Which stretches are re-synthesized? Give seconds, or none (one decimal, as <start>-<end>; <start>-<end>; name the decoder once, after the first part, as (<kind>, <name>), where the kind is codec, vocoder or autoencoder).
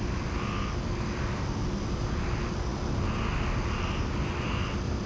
none